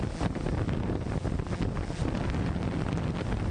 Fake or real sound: real